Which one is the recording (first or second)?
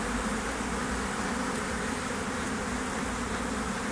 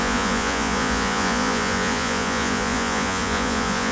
first